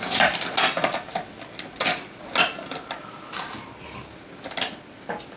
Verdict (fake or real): real